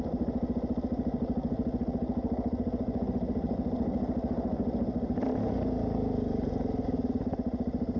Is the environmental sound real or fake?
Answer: real